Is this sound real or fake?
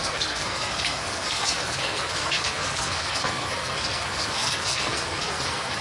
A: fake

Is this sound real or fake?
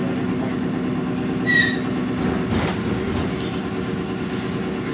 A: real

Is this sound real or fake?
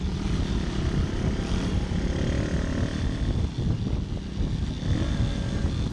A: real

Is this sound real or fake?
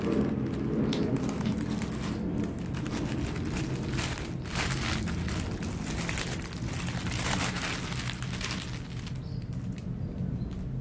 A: real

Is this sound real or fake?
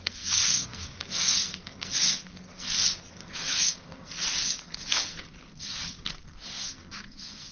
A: fake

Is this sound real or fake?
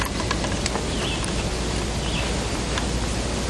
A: real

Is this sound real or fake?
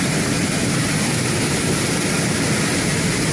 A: real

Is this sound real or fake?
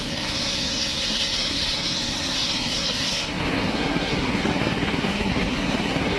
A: fake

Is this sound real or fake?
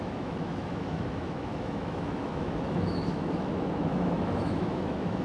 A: fake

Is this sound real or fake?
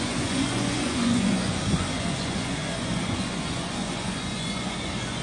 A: fake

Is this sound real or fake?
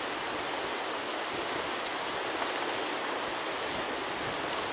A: real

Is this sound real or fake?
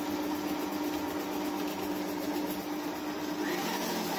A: real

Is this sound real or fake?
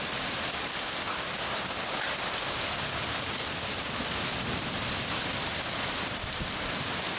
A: real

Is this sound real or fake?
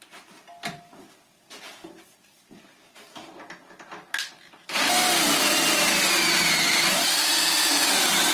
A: real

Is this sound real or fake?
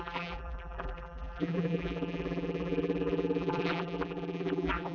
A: fake